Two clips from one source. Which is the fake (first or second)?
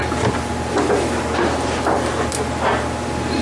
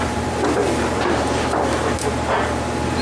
second